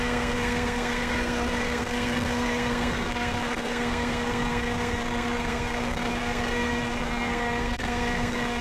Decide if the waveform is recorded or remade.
remade